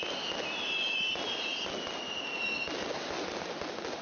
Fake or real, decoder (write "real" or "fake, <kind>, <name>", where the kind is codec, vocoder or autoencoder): real